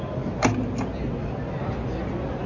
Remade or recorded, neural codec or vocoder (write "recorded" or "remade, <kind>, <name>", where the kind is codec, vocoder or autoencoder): recorded